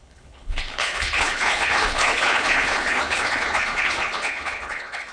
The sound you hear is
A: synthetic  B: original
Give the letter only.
A